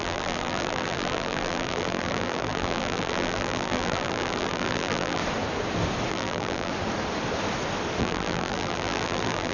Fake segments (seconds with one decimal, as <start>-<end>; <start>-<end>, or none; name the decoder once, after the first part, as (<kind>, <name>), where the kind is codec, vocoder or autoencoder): 0.0-5.2 (vocoder, BigVGAN v2); 6.1-6.7; 8.0-9.5